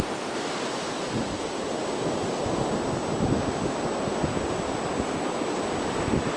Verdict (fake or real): real